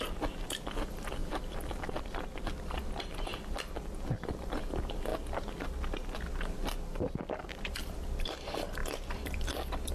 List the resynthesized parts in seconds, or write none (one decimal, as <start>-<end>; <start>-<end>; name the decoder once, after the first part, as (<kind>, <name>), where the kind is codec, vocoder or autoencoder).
1.2-2.0 (vocoder, BigVGAN v2); 8.8-9.9